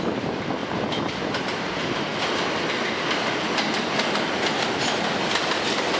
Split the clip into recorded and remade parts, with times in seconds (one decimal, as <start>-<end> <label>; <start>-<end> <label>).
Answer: 0.0-6.0 recorded